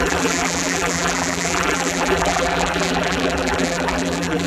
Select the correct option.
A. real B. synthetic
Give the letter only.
B